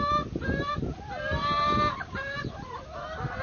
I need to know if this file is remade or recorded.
recorded